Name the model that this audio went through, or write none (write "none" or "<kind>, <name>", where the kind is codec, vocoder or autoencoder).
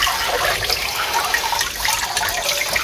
none